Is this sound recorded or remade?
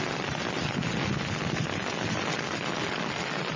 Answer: recorded